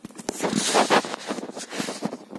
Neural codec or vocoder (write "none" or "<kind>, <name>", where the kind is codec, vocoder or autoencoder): none